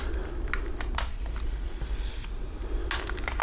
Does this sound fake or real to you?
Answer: real